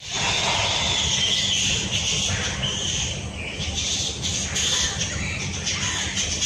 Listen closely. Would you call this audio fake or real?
real